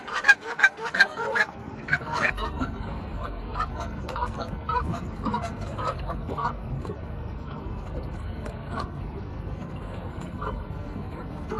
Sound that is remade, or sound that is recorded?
remade